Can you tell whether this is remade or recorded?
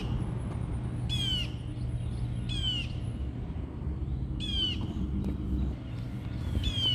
recorded